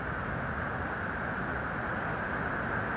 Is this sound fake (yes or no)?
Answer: no